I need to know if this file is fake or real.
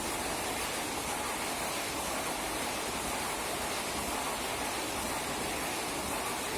real